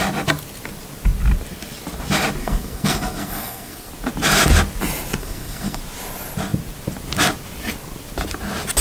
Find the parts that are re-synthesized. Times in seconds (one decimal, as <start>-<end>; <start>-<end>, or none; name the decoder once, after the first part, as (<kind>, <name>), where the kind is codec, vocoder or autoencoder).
2.4-3.9 (codec, SNAC); 5.2-5.8